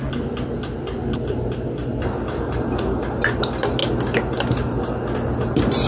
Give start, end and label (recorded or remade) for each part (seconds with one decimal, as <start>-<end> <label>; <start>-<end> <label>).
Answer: 0.0-5.9 recorded